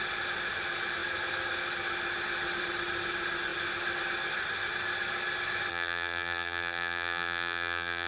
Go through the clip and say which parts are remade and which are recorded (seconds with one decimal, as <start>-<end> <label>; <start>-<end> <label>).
0.0-5.7 recorded; 5.7-8.1 remade